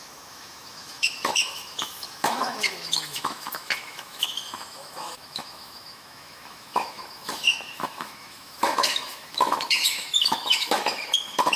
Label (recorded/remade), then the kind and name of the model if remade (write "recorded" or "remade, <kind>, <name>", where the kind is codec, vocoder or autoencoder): remade, autoencoder, DAC-VAE